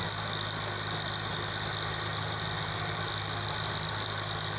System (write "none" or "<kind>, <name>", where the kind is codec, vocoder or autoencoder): none